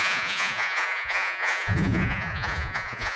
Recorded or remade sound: remade